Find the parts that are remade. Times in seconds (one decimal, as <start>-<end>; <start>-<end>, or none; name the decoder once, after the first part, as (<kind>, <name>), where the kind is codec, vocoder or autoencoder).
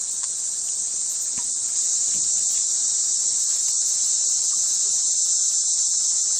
0.0-1.9 (vocoder, BigVGAN v2); 4.3-6.4